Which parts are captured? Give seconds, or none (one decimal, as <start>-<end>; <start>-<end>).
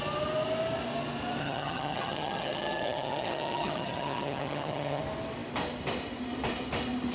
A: 0.0-1.4; 5.0-7.1